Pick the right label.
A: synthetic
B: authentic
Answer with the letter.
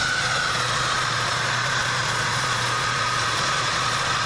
A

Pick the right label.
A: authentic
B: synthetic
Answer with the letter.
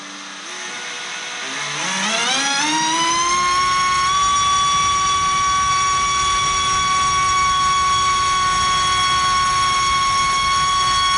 A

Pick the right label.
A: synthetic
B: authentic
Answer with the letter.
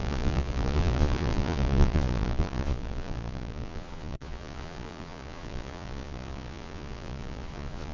A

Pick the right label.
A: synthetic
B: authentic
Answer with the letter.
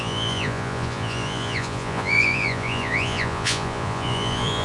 A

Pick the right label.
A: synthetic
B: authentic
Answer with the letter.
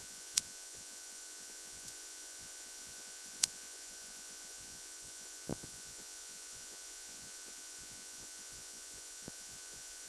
A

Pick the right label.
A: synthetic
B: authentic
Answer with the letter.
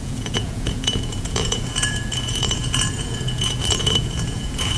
A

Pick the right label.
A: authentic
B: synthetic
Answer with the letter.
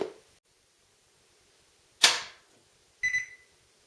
A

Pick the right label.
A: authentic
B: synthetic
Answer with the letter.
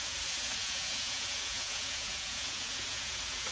B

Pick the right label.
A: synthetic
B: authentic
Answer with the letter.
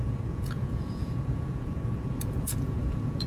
A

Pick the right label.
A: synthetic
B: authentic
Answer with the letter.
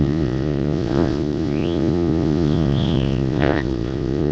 A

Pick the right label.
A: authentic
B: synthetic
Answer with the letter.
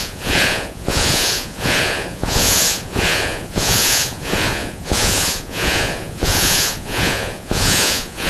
B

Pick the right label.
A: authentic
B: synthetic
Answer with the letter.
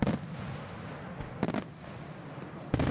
A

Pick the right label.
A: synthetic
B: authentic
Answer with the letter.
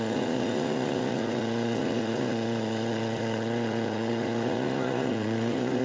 A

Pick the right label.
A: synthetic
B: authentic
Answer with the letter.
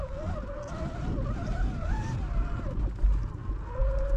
B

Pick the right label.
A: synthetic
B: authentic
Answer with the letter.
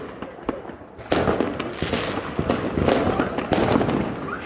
B